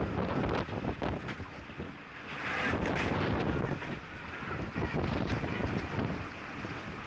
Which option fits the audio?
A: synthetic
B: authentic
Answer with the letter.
B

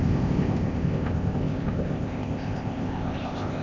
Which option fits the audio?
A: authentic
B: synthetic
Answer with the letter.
B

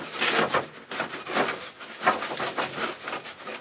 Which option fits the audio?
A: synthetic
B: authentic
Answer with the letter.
B